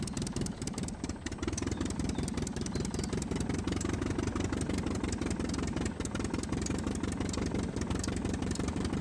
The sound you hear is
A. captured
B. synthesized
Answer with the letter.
A